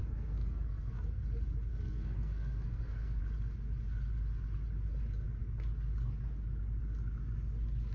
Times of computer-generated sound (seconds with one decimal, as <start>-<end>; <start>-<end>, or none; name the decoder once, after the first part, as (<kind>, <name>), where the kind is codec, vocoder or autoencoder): 0.0-1.2 (codec, SNAC); 1.7-3.2